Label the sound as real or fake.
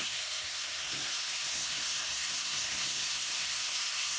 fake